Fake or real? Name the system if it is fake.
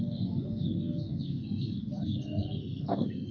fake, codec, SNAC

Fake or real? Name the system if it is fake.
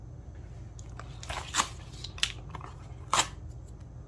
real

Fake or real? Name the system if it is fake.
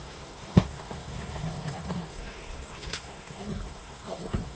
fake, codec, SNAC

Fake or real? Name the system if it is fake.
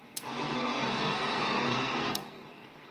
fake, codec, SNAC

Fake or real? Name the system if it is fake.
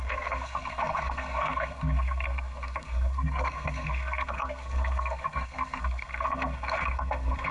fake, codec, SNAC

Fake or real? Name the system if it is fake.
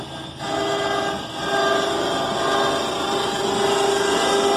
real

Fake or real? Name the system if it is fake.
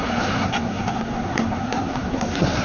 fake, codec, SNAC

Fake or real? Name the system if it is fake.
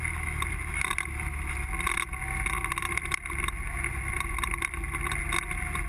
real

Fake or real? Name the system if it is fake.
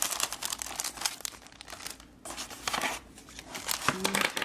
real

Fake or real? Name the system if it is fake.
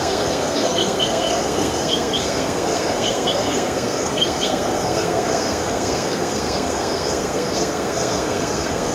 fake, codec, SNAC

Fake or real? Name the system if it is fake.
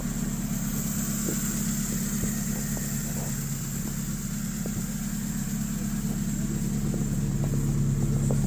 real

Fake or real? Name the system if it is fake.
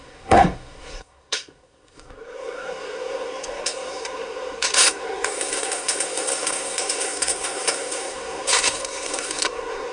fake, codec, SNAC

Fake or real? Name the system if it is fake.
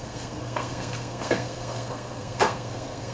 fake, codec, SNAC